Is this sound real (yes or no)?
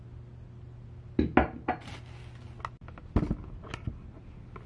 yes